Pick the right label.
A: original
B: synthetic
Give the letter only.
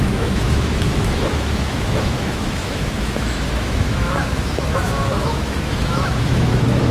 B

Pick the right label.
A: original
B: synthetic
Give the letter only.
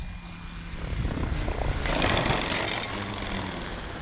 A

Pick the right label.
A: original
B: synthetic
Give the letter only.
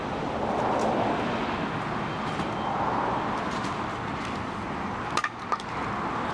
A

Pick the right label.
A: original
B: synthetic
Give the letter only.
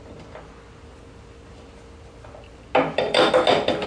A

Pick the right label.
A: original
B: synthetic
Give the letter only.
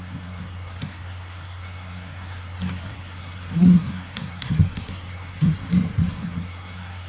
B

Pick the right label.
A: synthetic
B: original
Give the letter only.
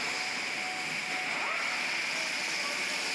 B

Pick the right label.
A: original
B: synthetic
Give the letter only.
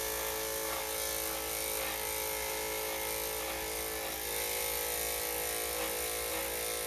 A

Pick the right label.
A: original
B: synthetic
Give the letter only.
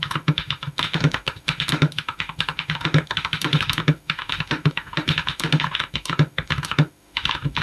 B